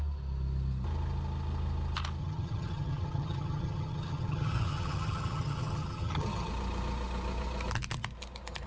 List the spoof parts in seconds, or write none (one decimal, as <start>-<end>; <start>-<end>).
2.2-6.5